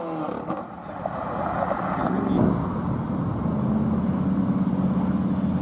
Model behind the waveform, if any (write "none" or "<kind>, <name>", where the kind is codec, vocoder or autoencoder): none